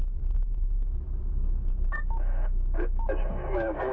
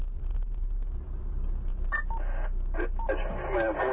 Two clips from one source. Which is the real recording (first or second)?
second